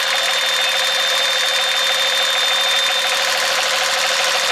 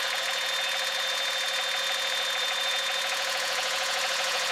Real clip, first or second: first